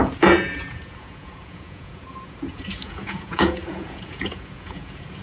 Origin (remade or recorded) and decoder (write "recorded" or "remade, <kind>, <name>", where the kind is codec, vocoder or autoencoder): remade, vocoder, Vocos